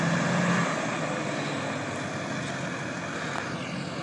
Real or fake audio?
real